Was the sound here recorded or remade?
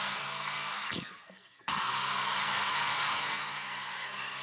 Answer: remade